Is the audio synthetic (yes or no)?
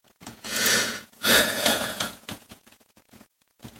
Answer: yes